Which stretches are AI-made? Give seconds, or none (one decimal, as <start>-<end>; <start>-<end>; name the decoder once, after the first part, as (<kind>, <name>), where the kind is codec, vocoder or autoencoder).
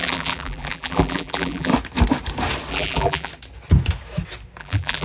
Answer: 0.0-1.7 (vocoder, BigVGAN v2); 2.7-3.3; 4.6-5.0